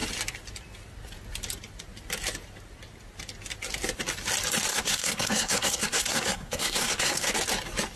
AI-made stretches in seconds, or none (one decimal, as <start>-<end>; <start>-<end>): 4.7-7.3